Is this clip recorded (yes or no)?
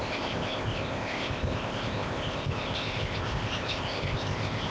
no